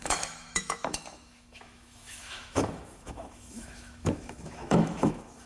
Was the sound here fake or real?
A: fake